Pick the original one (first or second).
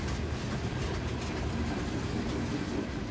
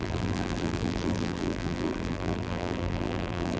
first